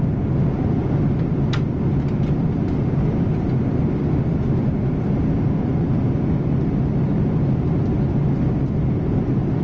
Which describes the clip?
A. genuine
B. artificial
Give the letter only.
A